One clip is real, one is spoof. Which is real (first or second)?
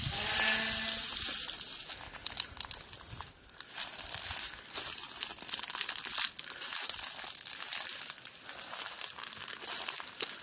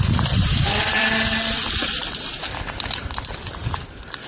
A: first